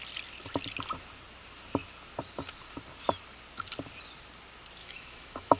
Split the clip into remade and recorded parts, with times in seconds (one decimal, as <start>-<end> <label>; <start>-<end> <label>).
0.0-4.8 recorded; 4.8-5.6 remade